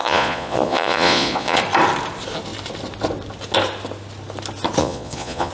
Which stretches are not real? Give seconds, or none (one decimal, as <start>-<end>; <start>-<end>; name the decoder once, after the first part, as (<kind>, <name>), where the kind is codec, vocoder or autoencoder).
0.0-1.6 (vocoder, Vocos); 4.8-5.5